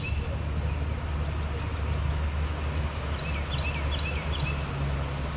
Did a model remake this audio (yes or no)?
no